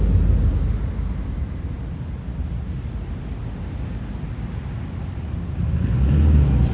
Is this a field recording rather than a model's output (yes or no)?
yes